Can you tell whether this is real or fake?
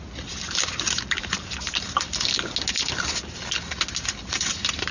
real